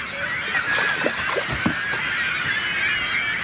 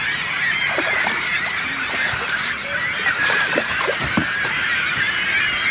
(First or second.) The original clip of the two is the first